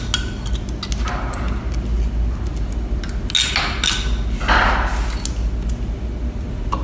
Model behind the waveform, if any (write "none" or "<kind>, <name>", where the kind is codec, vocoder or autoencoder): none